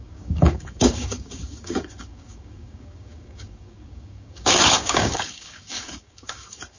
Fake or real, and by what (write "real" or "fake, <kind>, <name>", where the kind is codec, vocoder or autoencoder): fake, codec, DAC